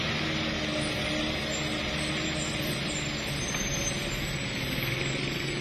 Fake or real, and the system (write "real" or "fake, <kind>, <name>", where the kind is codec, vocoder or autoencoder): real